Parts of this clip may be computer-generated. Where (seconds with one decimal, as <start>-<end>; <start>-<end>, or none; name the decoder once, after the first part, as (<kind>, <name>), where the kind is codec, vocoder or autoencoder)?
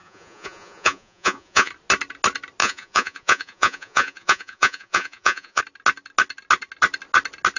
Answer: 0.0-1.7 (vocoder, Vocos); 2.6-5.6